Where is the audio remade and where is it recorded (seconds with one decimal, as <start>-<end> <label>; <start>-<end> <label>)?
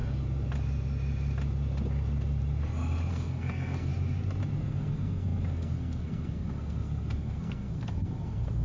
0.0-3.1 recorded; 3.1-3.9 remade; 3.9-4.6 recorded; 4.6-8.6 remade